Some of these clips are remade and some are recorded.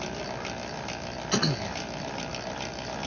recorded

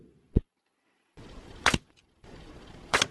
remade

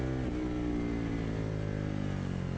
recorded